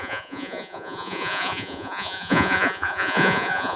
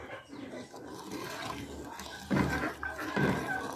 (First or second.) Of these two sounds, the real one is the second